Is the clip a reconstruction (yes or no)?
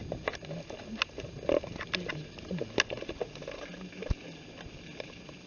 no